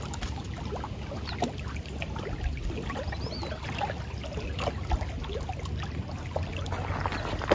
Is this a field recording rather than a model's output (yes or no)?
yes